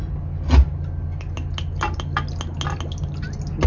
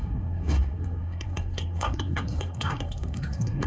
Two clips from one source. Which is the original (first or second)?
first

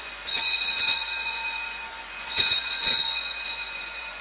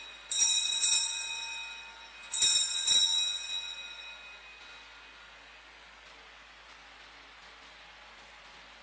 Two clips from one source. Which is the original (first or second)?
second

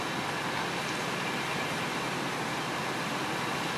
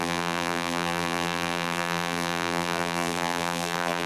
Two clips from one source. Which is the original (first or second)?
first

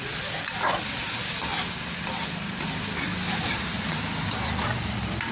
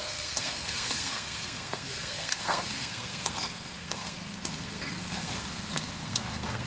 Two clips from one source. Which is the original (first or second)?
first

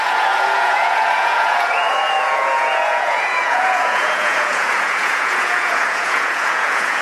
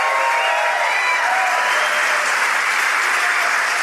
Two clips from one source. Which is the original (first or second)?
second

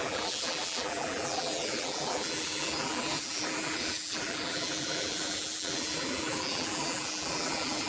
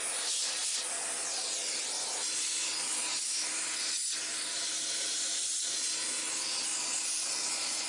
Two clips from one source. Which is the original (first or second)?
second